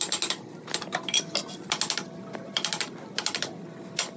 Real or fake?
real